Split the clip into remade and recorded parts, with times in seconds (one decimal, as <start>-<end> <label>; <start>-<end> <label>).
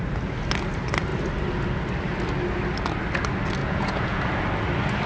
0.0-3.6 recorded; 3.6-4.2 remade; 4.2-5.1 recorded